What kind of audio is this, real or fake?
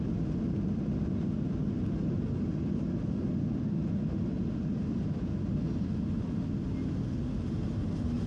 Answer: real